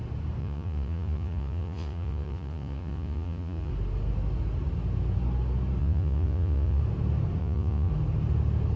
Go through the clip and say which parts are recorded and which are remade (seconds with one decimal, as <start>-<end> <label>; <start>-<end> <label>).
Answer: 0.0-0.4 recorded; 0.4-3.7 remade; 3.7-5.8 recorded; 5.8-6.8 remade; 6.8-7.4 recorded; 7.4-7.9 remade; 7.9-8.8 recorded